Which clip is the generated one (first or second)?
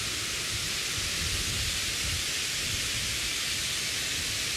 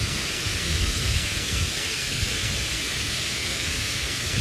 second